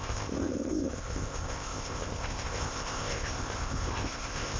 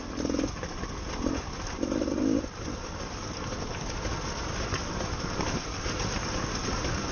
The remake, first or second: first